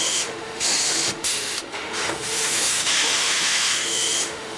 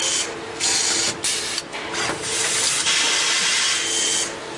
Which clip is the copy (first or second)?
first